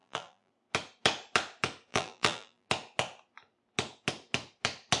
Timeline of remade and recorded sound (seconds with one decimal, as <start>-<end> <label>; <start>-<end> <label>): 0.0-0.5 remade; 0.5-1.9 recorded; 1.9-2.7 remade; 2.7-5.0 recorded